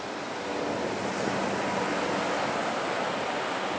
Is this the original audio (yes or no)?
yes